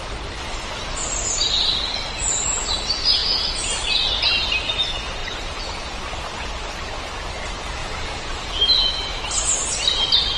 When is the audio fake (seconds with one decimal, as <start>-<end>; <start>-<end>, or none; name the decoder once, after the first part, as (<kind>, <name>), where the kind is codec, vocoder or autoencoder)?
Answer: 3.2-3.7 (vocoder, Vocos); 5.2-5.9; 7.8-8.6

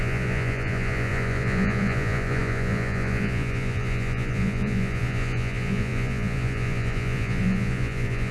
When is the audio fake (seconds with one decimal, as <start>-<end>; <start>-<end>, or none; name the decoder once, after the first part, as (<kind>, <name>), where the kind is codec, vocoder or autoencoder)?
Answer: 0.0-8.3 (vocoder, Vocos)

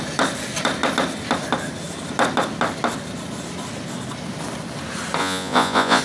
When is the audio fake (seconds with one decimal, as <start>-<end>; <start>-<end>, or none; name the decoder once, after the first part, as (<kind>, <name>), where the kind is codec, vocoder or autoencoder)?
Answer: 5.2-6.0 (vocoder, Vocos)

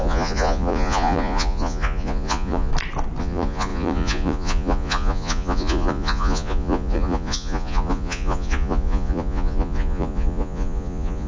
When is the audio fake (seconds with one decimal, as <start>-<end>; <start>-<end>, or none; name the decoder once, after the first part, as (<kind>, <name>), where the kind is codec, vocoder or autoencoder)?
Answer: 0.0-2.7 (vocoder, Vocos); 3.2-11.3

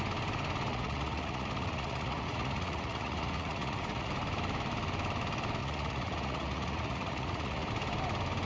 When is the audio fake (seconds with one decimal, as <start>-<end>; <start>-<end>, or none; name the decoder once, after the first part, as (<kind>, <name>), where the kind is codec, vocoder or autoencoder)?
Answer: 0.7-4.1 (vocoder, Vocos); 5.6-7.7